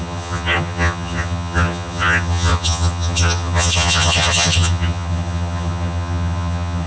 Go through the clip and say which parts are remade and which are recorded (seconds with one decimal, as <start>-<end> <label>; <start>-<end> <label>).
0.0-6.9 remade